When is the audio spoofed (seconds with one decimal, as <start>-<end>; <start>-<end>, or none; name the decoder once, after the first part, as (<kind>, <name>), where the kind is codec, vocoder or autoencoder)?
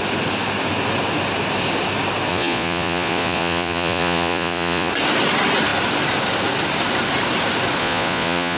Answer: 2.3-4.9 (vocoder, Vocos); 7.8-8.6